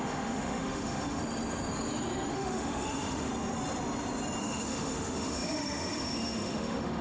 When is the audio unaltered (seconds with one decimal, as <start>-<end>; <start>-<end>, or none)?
1.2-2.3; 3.3-4.4